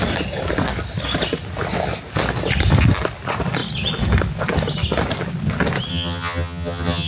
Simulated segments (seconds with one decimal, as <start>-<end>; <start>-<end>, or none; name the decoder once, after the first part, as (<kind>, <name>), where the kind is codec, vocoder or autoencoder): 5.9-7.1 (vocoder, HiFi-GAN)